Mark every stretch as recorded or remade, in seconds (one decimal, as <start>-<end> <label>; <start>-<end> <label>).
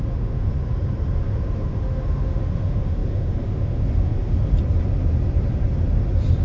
0.0-0.5 remade; 0.5-1.2 recorded; 1.2-4.5 remade; 4.5-6.4 recorded